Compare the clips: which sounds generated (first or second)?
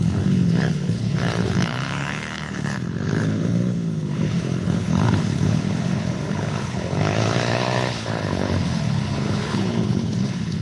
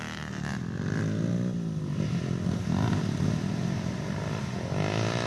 first